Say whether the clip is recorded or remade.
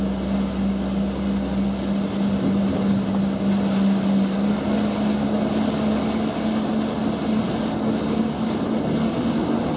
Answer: recorded